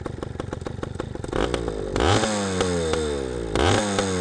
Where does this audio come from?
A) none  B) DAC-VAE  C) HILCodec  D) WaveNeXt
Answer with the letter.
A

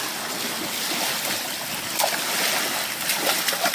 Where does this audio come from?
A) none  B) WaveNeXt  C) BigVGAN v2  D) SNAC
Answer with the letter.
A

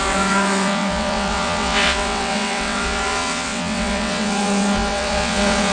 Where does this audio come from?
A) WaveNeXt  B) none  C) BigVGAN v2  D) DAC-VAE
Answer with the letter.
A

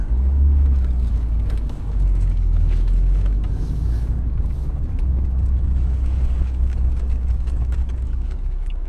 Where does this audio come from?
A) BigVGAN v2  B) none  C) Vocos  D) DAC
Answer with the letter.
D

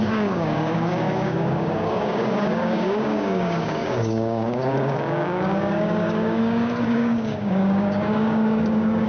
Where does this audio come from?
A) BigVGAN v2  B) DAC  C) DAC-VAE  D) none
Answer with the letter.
B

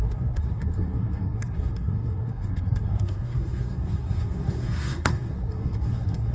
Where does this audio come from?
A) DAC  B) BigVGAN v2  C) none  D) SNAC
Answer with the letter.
D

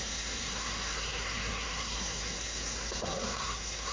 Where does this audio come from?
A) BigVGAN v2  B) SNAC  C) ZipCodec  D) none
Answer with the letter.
B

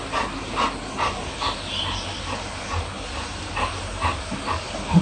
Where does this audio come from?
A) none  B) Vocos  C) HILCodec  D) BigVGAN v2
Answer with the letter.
A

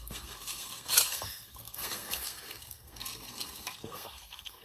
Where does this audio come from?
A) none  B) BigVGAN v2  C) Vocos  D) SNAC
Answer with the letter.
D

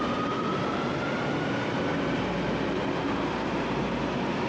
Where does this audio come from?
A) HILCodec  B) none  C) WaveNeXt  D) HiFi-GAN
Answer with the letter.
B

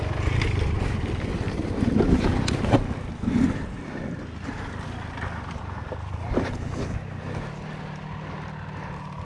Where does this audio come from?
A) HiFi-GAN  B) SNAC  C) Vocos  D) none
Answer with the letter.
D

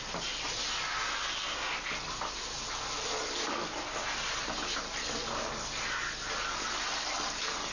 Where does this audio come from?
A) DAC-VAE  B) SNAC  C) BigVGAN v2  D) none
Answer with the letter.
D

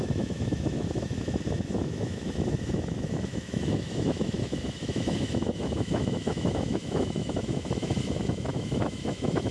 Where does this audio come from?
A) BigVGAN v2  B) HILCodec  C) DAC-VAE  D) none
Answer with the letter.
C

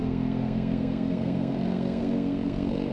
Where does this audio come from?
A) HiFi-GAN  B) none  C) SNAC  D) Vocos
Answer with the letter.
C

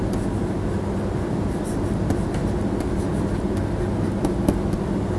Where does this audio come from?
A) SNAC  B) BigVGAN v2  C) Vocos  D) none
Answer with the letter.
D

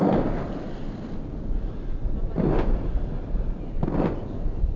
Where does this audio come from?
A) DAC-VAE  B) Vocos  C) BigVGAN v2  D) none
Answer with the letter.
D